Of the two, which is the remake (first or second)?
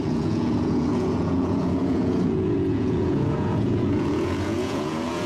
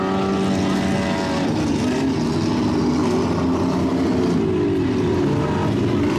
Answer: first